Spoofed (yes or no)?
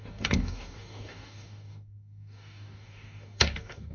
yes